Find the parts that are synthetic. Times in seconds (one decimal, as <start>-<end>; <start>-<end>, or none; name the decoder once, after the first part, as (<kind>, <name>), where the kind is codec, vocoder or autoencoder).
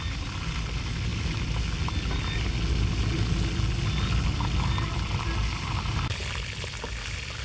none